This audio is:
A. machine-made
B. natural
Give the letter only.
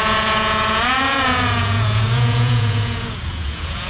A